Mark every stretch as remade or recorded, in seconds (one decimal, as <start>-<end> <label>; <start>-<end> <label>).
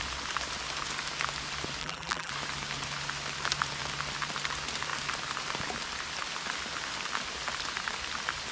0.0-1.8 recorded; 1.8-2.3 remade; 2.3-8.5 recorded